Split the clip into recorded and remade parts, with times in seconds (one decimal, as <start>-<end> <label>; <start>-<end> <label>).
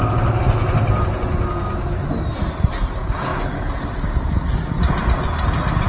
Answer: 0.0-5.9 recorded